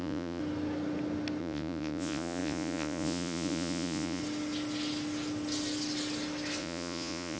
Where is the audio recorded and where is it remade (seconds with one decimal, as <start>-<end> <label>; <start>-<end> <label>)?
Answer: 0.0-0.4 remade; 0.4-1.4 recorded; 1.4-4.2 remade; 4.2-6.6 recorded; 6.6-7.4 remade